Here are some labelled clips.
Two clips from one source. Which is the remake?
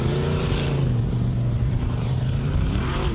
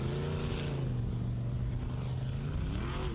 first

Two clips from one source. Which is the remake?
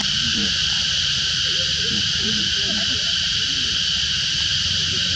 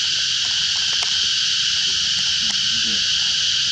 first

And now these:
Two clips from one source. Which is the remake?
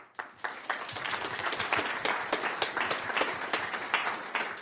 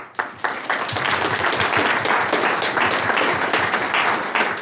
first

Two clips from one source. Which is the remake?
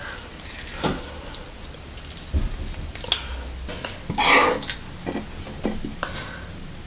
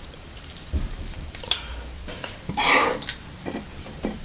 second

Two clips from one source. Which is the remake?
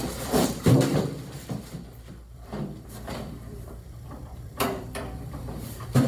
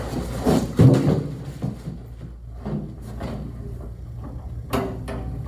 first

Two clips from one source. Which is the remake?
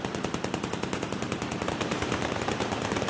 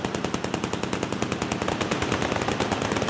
first